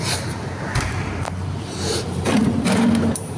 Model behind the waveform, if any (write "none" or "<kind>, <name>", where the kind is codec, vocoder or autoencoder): vocoder, BigVGAN v2